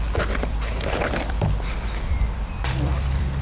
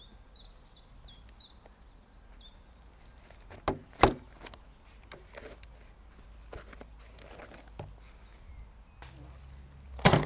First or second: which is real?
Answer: second